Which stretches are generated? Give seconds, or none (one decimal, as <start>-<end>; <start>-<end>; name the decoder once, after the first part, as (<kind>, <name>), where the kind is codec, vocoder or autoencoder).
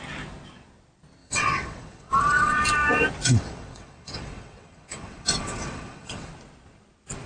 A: 1.2-2.6 (vocoder, WaveNeXt); 3.2-6.3